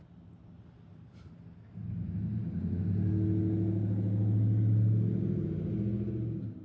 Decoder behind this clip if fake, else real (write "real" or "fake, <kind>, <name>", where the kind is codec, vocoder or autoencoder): real